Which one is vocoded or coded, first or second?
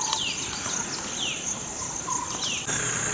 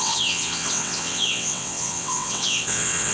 second